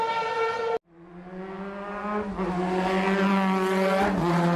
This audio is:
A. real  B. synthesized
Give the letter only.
A